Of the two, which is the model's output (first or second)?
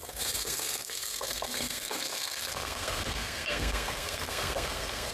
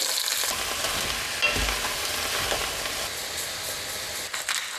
first